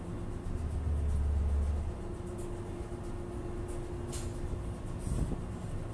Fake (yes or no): no